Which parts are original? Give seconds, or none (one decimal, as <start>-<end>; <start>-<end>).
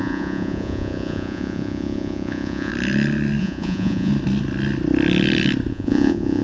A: 2.7-3.4; 4.1-5.7